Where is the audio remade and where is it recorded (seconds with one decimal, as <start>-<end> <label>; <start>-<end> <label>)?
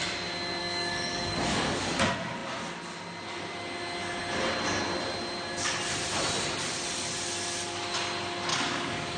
0.0-0.6 recorded; 0.6-2.0 remade; 2.0-8.5 recorded; 8.5-9.2 remade